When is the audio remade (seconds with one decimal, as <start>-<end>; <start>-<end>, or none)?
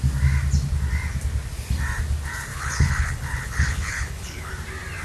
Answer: 2.5-4.5